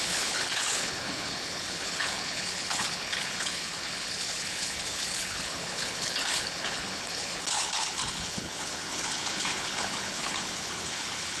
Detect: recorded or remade remade